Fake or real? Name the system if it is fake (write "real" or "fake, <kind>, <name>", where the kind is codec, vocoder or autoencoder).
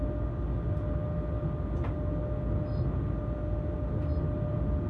real